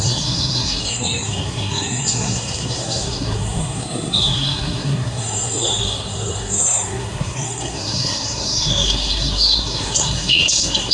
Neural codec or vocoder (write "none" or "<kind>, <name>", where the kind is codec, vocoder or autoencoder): codec, SNAC